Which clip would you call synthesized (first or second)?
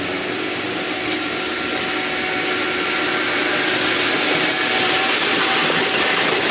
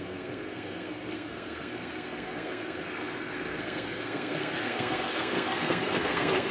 second